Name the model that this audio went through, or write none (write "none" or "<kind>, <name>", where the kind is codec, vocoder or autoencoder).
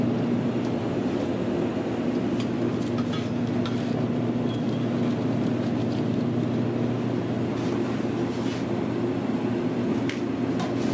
none